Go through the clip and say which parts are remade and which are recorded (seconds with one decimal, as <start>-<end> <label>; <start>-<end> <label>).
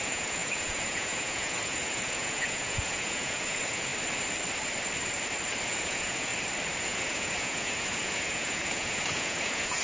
0.0-3.9 remade; 3.9-5.6 recorded; 5.6-6.3 remade; 6.3-6.8 recorded; 6.8-9.8 remade